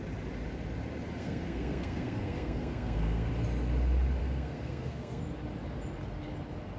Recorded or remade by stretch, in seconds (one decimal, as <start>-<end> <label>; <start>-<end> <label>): 0.0-1.2 recorded; 1.2-3.3 remade; 3.3-4.2 recorded; 4.2-5.2 remade; 5.2-6.8 recorded